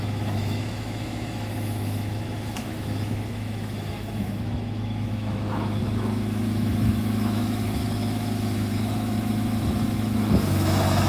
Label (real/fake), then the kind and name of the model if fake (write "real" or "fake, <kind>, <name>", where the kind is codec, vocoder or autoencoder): fake, autoencoder, DAC-VAE